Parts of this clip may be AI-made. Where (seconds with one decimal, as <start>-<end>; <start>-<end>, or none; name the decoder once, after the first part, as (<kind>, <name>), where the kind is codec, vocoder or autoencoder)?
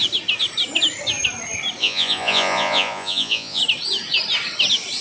1.8-3.6 (vocoder, Vocos)